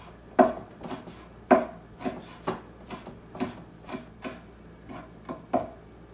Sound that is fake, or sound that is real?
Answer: real